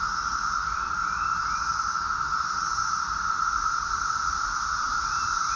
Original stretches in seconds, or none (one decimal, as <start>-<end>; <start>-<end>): 0.0-5.6